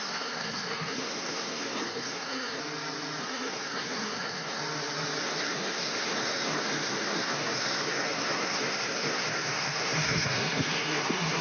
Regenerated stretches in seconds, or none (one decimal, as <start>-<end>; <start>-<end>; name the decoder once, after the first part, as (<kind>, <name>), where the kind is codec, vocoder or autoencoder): 0.0-2.6 (codec, SNAC); 3.2-4.6; 5.2-11.4